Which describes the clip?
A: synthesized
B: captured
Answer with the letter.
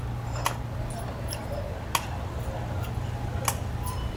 B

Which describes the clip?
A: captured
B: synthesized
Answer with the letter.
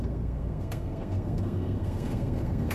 B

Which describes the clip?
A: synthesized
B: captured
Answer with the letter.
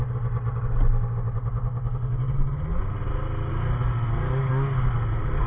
B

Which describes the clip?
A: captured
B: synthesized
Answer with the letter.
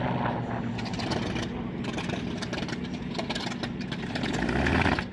A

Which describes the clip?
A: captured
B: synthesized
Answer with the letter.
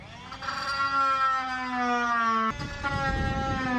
A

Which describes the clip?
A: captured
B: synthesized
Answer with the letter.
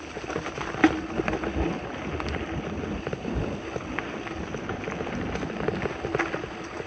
A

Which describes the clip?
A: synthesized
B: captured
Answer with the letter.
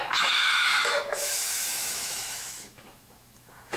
A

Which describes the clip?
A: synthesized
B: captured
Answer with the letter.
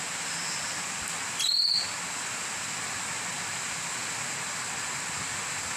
B